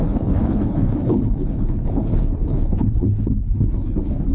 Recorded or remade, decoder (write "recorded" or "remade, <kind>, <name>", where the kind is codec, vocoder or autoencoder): remade, codec, HILCodec